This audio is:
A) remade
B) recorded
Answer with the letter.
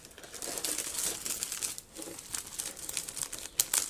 B